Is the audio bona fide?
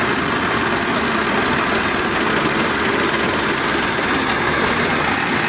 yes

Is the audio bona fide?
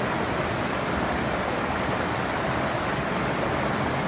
no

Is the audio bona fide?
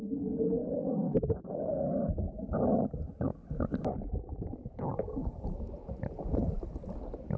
yes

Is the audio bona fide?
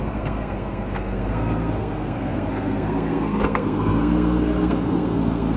no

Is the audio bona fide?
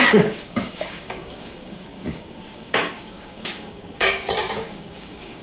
no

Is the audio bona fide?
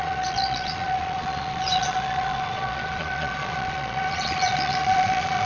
no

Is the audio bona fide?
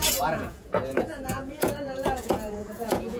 no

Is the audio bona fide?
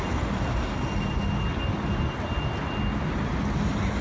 yes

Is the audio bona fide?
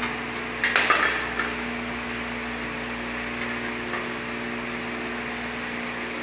yes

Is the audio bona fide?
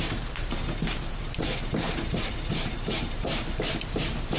no